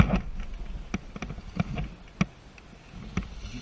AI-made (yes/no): no